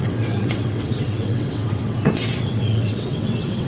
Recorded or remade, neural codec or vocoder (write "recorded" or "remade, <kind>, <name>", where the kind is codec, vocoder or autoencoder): remade, vocoder, WaveNeXt